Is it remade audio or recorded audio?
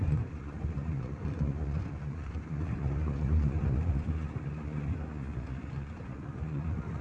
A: remade